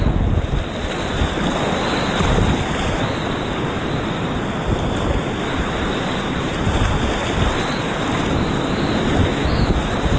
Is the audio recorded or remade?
recorded